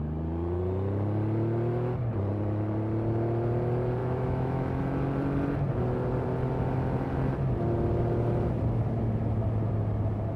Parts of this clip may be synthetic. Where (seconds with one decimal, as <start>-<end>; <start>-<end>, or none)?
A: 4.0-4.8